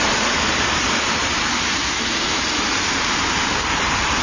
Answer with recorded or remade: remade